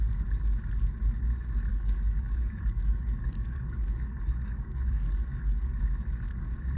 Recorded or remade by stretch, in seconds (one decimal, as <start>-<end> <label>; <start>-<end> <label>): 0.0-1.7 recorded; 1.7-5.8 remade; 5.8-6.8 recorded